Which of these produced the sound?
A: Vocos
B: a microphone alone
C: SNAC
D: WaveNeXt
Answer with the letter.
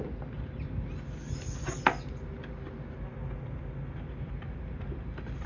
B